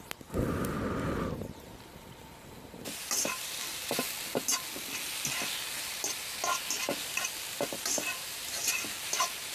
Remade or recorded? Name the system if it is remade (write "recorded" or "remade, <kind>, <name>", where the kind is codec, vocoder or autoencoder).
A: recorded